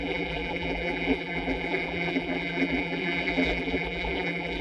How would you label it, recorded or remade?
remade